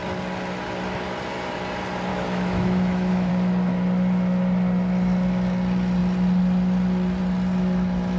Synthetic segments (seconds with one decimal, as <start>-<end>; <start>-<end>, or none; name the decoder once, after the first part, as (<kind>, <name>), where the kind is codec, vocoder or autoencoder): 2.1-3.3 (autoencoder, DAC-VAE)